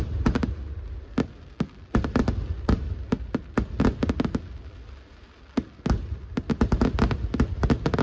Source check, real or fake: real